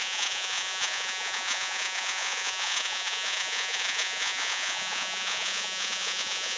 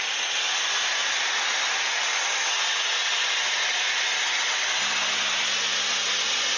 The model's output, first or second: first